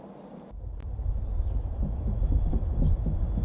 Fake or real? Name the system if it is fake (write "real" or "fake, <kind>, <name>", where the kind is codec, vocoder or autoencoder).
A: real